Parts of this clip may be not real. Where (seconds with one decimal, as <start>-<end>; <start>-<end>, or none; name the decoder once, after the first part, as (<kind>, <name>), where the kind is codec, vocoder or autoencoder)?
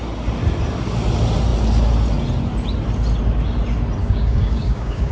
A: 4.0-5.1 (codec, DAC)